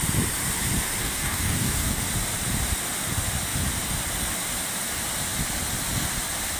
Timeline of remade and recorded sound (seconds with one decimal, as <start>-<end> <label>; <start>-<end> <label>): 0.0-1.0 recorded; 1.0-2.0 remade; 2.0-6.6 recorded